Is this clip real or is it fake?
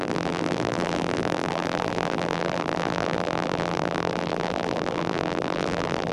fake